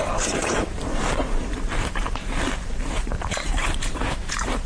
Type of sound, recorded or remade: remade